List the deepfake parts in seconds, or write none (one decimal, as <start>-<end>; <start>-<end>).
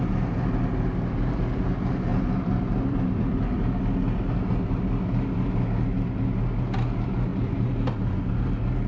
2.1-6.6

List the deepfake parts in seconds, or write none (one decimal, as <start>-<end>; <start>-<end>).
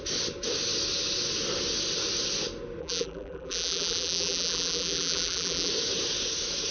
2.8-5.7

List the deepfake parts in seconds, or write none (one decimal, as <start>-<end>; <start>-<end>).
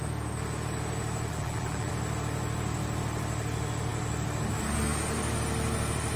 1.3-1.9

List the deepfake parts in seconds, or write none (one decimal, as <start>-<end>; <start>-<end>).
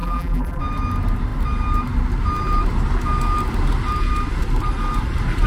0.0-0.6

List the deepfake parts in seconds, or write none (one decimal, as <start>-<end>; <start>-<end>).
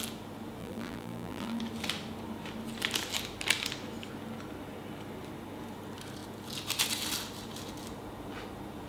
0.6-1.6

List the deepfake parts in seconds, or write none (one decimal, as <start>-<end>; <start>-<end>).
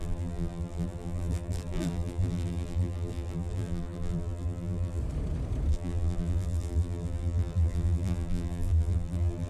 0.0-5.0; 5.7-9.5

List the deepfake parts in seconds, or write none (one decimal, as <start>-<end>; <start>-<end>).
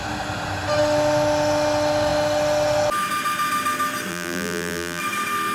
4.1-5.0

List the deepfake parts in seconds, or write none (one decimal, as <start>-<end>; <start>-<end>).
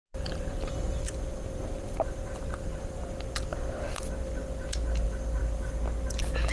0.0-3.0; 3.5-4.4